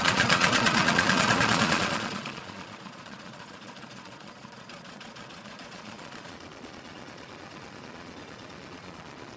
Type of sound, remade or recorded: remade